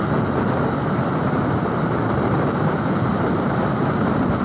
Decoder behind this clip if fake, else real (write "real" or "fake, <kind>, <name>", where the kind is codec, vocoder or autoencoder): fake, vocoder, BigVGAN v2